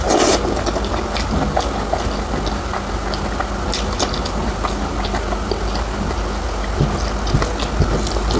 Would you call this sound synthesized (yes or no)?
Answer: no